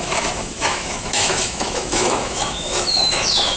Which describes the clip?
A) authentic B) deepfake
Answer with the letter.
B